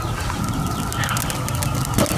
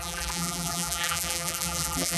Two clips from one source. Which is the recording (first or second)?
first